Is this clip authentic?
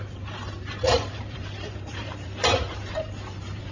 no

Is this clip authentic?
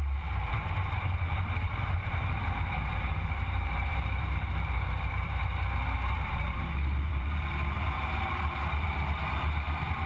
no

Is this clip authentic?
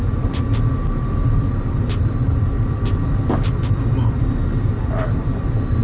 yes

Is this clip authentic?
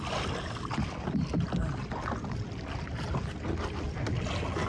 yes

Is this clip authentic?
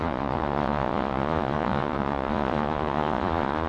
no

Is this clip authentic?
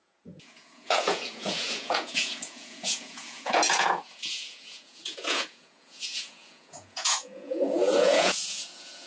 no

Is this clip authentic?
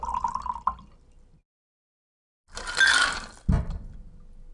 yes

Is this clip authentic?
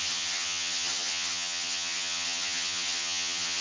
no